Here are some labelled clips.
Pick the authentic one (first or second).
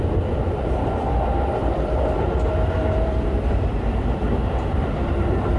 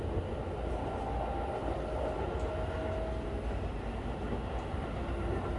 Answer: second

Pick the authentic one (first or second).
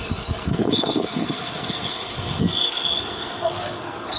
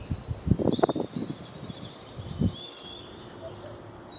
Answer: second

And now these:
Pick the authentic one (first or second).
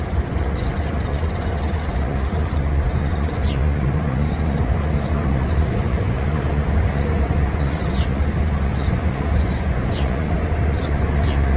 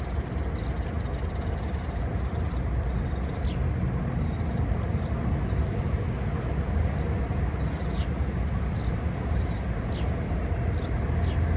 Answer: second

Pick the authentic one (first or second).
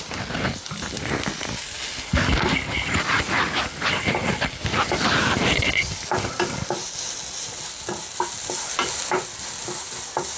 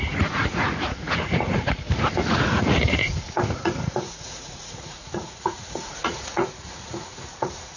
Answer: first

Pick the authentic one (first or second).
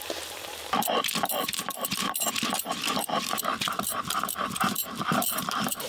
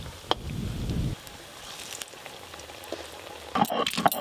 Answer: second